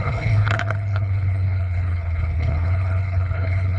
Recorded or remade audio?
remade